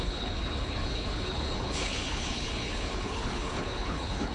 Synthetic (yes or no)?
yes